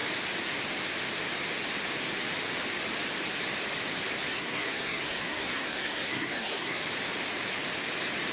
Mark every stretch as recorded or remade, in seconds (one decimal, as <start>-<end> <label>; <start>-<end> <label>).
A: 0.0-4.3 recorded; 4.3-6.8 remade; 6.8-8.3 recorded